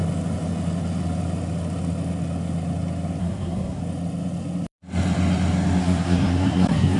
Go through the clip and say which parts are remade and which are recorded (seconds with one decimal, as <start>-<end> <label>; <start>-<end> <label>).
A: 0.0-3.2 recorded; 3.2-3.8 remade; 3.8-5.8 recorded; 5.8-7.0 remade